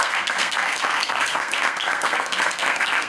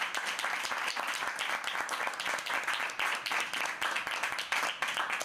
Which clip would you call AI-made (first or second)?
first